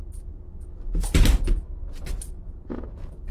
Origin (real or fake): real